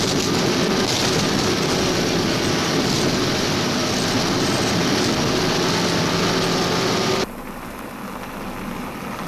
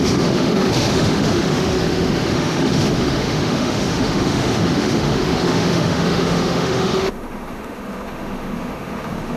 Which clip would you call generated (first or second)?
second